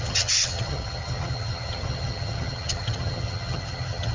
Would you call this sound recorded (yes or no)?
no